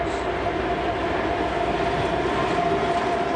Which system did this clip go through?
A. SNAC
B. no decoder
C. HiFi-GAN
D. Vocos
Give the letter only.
B